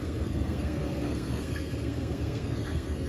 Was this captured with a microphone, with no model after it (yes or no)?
no